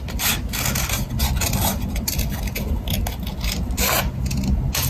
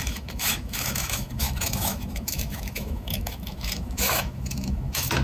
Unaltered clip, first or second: first